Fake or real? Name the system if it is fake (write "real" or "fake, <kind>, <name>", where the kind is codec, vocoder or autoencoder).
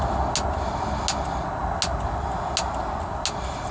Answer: real